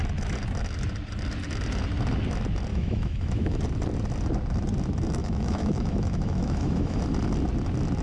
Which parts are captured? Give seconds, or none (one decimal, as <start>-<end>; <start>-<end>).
0.0-2.7; 3.6-5.2; 7.0-8.0